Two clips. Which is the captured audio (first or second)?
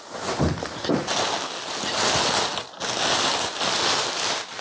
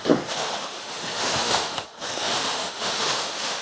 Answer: first